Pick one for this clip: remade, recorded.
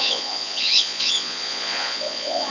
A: remade